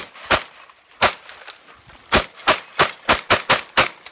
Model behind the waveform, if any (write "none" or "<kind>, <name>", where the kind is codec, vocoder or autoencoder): none